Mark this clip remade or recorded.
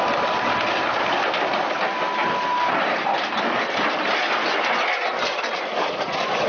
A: recorded